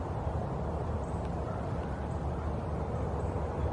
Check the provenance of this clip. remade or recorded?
recorded